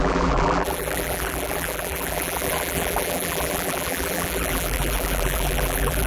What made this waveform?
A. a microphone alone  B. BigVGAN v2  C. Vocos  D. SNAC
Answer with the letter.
B